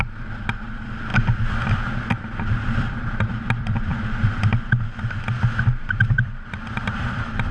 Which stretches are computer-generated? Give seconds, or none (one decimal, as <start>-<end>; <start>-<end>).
0.0-1.1; 2.5-3.9; 5.8-7.5